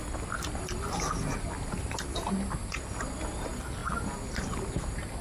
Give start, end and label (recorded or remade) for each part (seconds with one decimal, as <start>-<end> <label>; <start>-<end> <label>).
0.0-1.8 recorded; 1.8-2.3 remade; 2.3-5.2 recorded